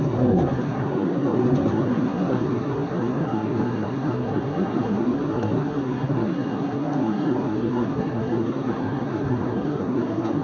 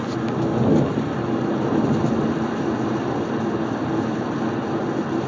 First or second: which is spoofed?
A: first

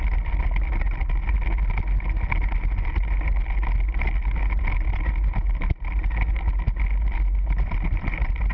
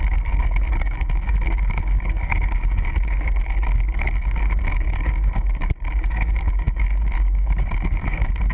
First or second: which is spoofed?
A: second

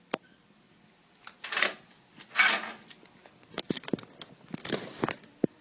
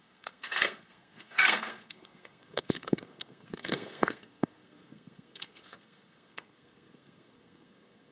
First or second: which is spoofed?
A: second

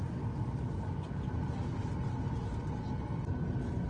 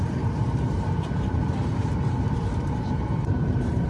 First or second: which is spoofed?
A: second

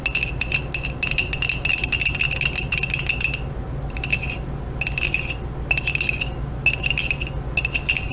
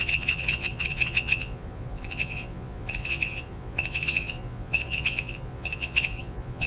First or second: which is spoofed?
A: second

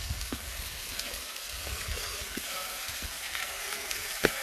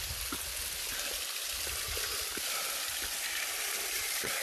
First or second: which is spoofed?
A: first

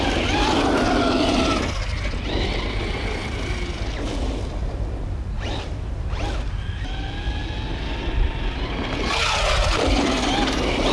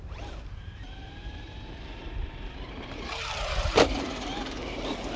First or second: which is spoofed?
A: second